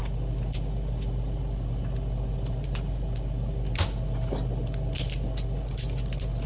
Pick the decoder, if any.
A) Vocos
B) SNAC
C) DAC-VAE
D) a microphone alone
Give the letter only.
D